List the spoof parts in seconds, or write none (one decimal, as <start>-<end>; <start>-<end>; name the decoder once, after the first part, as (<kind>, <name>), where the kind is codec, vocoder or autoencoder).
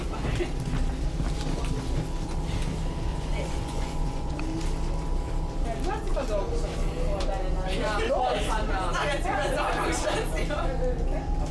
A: 3.1-4.4 (vocoder, Vocos)